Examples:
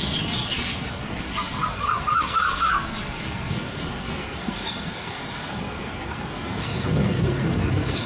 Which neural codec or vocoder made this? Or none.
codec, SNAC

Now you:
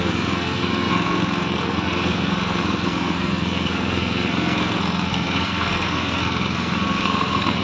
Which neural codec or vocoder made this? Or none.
codec, SNAC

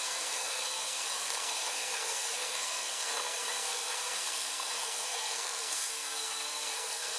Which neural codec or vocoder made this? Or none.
codec, SNAC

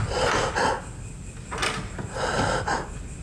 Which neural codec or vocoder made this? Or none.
none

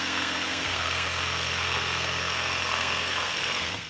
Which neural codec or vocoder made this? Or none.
codec, SNAC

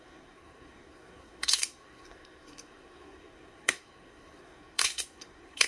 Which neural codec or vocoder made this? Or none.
codec, SNAC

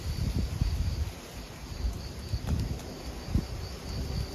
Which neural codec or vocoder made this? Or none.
none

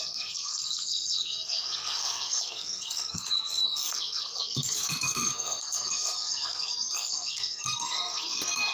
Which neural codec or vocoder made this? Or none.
codec, SNAC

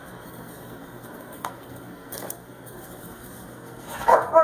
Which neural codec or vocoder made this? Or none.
codec, SNAC